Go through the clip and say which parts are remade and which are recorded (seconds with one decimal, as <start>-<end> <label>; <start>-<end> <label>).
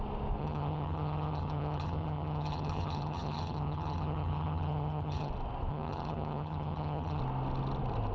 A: 0.0-0.4 recorded; 0.4-5.3 remade; 5.3-5.7 recorded; 5.7-7.2 remade; 7.2-8.1 recorded